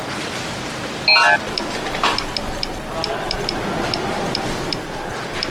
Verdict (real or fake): real